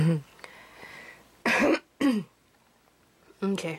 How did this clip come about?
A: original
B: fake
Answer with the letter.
A